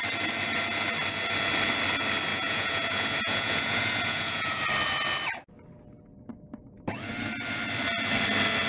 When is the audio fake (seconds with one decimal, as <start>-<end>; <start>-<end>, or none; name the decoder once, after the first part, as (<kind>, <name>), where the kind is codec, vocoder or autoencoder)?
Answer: 2.3-4.6 (vocoder, Vocos)